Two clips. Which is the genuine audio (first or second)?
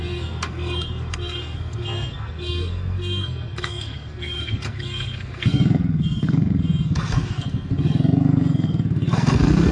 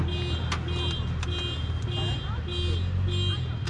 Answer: second